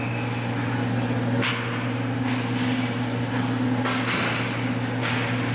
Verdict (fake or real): real